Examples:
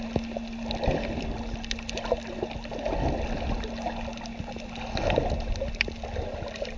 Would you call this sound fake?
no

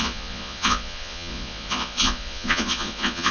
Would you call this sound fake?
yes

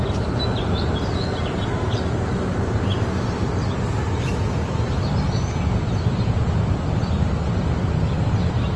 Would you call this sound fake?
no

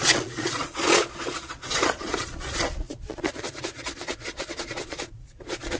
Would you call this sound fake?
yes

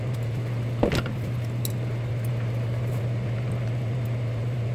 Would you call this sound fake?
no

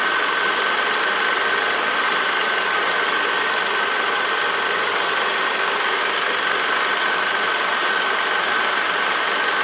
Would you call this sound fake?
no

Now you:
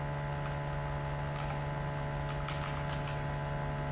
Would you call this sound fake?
no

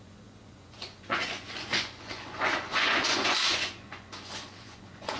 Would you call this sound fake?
yes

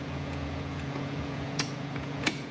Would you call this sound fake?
yes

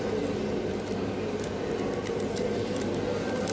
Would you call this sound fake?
no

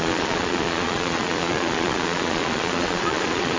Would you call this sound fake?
yes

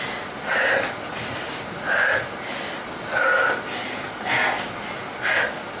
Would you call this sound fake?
no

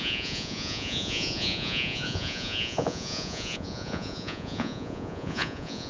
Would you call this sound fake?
yes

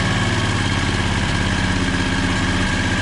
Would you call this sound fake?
no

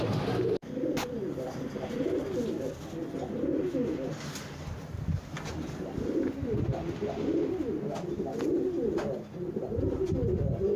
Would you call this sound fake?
no